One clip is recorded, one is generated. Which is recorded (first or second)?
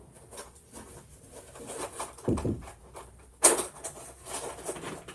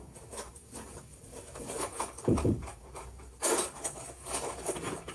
first